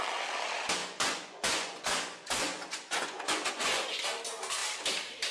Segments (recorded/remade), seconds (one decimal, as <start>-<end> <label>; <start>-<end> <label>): 0.0-0.8 recorded; 0.8-4.0 remade; 4.0-5.3 recorded